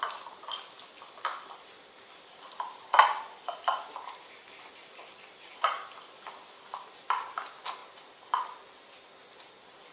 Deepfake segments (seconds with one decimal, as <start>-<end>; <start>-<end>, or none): none